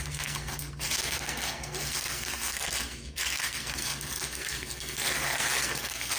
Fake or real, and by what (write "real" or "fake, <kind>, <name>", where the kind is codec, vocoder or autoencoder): fake, codec, SNAC